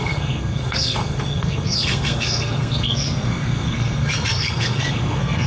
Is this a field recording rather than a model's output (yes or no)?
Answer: no